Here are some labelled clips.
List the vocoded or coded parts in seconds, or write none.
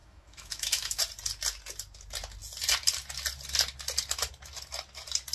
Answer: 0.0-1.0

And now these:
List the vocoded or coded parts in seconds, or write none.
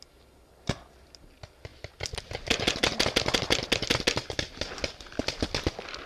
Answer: none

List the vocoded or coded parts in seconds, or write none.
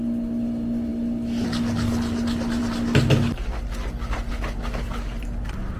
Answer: none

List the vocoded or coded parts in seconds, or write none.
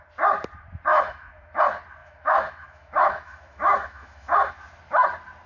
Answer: 0.9-1.6; 2.0-4.5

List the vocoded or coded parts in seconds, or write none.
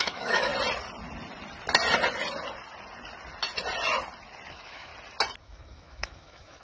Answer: 0.0-0.5; 4.5-4.9; 5.4-6.6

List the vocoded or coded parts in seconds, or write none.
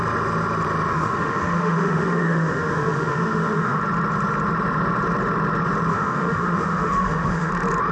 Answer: 0.9-3.8; 5.9-7.5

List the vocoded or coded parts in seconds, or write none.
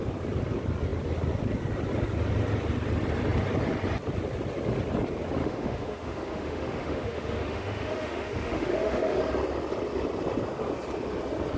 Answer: 5.4-9.2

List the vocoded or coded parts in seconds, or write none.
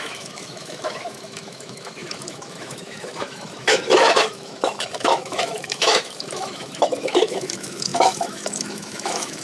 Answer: 0.0-9.4